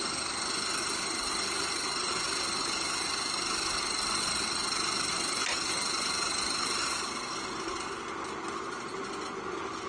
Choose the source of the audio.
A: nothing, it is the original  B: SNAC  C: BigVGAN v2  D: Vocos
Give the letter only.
A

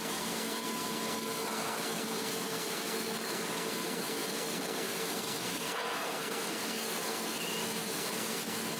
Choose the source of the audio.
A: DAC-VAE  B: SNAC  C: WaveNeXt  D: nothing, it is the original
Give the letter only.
B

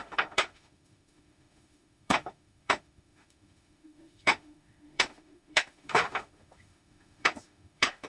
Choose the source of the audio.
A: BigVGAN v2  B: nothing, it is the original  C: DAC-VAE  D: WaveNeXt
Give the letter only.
C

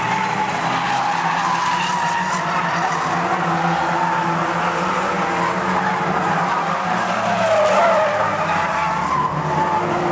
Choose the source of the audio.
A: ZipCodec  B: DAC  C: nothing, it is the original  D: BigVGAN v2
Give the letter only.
C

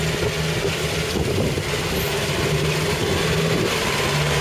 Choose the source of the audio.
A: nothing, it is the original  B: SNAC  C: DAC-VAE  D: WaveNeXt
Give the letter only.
A